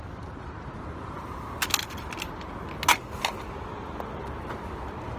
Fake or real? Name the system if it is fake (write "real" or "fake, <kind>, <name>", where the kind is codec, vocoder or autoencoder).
real